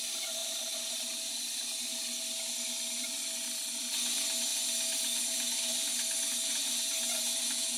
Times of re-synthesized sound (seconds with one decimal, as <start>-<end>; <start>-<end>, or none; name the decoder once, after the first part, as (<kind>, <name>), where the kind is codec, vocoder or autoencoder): 0.4-3.8 (vocoder, BigVGAN v2); 4.5-6.3